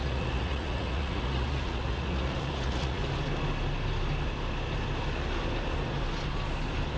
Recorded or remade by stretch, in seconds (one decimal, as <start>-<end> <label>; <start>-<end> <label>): 0.0-3.0 remade; 3.0-7.0 recorded